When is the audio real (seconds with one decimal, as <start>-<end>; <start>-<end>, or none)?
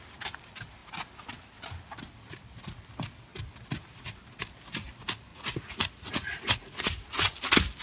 0.0-5.3; 7.3-7.8